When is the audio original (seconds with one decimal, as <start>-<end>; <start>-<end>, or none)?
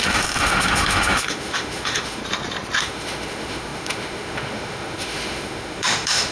2.2-2.8